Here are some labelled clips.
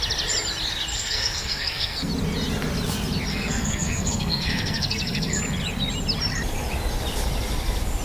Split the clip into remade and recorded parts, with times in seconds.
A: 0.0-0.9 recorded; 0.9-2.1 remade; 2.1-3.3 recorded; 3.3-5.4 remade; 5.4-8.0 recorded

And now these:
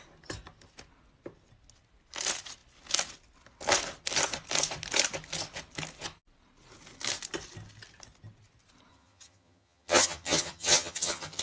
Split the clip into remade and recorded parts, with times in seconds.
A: 0.0-8.9 recorded; 8.9-11.4 remade